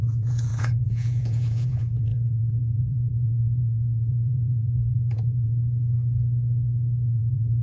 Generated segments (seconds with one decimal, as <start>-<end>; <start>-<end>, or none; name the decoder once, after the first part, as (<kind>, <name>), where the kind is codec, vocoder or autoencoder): 0.0-5.6 (vocoder, Vocos); 7.1-7.6